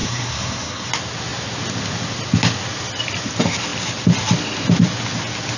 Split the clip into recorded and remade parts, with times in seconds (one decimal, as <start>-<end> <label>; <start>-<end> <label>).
0.0-0.9 remade; 0.9-5.6 recorded